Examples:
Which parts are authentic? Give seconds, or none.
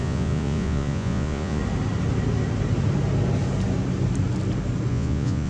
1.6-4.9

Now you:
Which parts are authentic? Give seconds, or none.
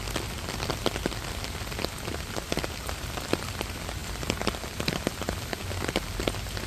0.0-6.7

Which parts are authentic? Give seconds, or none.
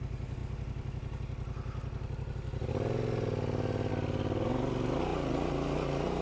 0.0-6.2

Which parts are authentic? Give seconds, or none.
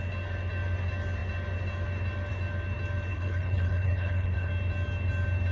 0.0-3.1; 4.5-5.5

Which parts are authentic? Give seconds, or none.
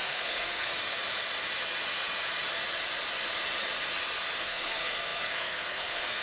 0.7-4.4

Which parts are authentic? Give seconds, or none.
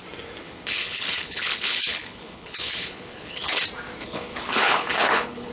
0.0-0.4; 3.6-4.0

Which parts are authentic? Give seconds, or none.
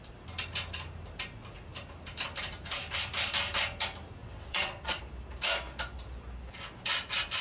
0.0-4.2; 5.0-7.4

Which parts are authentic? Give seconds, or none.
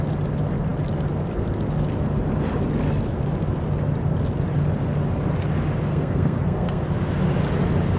0.0-5.9; 6.8-8.0